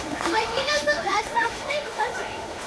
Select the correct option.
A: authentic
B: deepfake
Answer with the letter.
B